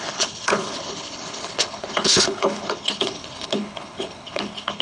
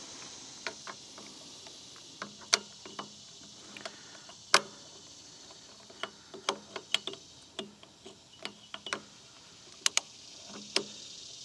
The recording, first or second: second